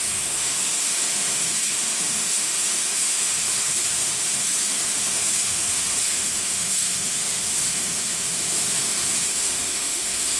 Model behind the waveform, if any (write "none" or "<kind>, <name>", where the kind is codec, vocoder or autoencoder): autoencoder, DAC-VAE